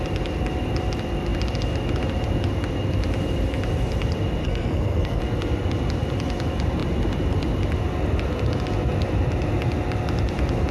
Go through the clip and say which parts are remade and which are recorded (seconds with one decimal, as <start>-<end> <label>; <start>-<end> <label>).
0.0-4.4 recorded; 4.4-5.2 remade; 5.2-10.7 recorded